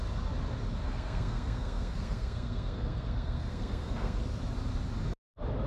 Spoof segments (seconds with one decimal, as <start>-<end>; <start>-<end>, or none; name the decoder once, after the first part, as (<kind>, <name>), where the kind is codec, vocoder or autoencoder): 0.8-4.2 (codec, SNAC)